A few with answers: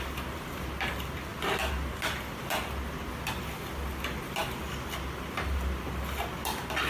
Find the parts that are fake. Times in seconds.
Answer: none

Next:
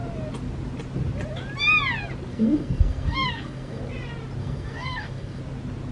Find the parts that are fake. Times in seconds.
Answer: 2.3-3.8 (codec, SNAC); 4.4-5.4

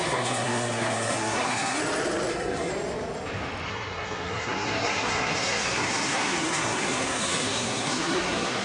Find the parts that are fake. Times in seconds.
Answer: 0.0-1.8 (codec, SNAC); 2.3-2.7; 3.7-8.6

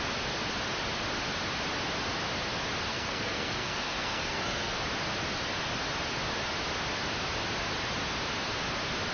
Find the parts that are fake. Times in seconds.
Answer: 2.9-4.8 (codec, SNAC)

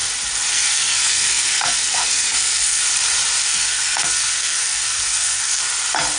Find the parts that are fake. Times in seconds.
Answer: 0.5-2.8 (codec, SNAC); 3.4-5.6

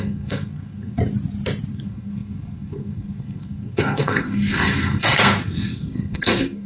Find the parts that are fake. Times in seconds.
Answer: 0.0-1.0 (codec, SNAC); 1.7-6.7